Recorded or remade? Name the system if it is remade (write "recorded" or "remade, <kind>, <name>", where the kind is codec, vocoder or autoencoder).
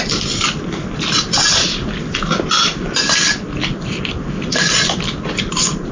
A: recorded